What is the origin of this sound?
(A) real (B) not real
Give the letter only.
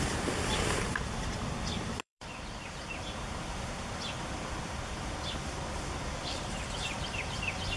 B